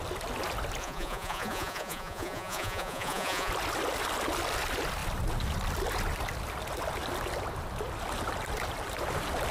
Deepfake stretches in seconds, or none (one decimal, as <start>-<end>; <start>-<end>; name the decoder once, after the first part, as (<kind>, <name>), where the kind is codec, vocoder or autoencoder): 0.8-3.5 (vocoder, Vocos)